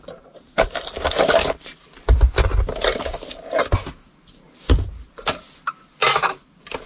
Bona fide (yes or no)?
yes